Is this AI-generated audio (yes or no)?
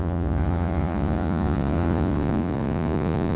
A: yes